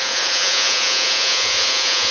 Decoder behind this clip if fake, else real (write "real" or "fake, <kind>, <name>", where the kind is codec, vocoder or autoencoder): fake, vocoder, Vocos